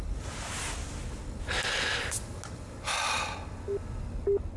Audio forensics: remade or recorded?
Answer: recorded